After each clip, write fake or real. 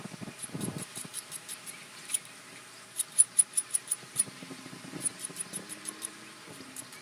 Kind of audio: fake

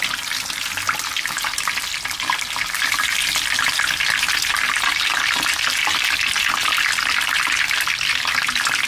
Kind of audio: real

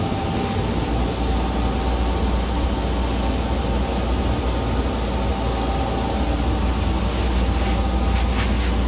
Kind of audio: real